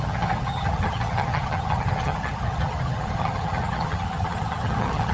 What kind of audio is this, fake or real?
fake